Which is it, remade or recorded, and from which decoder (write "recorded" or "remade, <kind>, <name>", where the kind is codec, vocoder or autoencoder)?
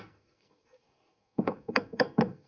remade, codec, SNAC